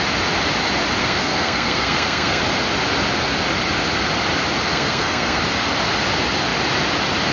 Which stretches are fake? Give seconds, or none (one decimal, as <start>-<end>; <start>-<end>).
1.0-2.4; 4.7-5.4